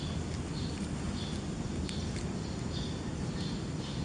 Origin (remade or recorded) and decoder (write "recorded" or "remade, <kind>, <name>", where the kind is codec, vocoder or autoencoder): recorded